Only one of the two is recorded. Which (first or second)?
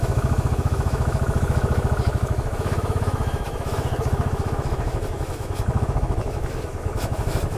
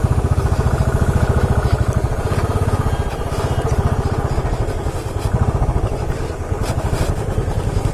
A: second